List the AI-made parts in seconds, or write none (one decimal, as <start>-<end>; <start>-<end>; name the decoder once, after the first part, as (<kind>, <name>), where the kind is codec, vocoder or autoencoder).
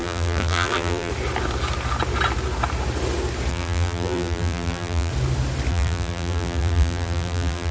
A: 0.0-1.1 (vocoder, BigVGAN v2); 3.5-5.1; 5.7-7.7